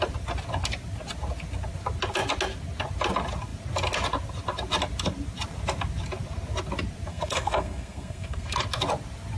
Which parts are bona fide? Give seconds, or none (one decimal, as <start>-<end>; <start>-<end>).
0.0-7.1; 8.6-9.4